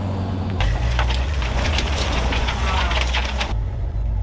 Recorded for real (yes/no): no